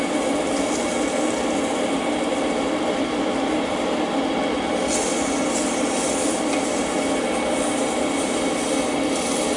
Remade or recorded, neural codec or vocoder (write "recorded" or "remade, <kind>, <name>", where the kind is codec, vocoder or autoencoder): recorded